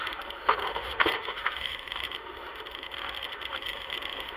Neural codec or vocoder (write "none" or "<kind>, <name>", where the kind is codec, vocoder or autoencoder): autoencoder, DAC-VAE